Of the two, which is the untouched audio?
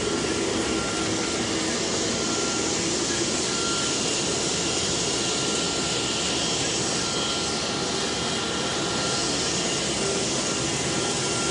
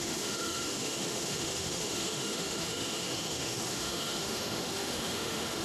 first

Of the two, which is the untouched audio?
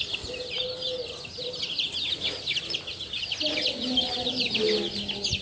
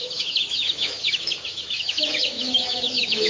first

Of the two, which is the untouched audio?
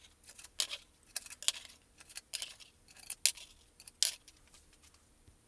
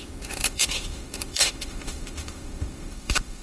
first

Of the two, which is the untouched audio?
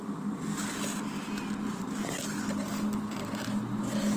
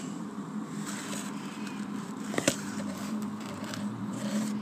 first